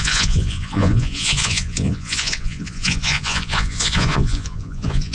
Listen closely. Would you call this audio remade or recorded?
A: remade